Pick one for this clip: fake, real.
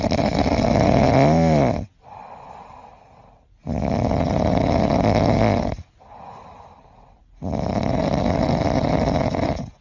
real